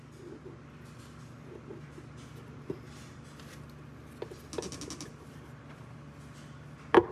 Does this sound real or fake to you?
real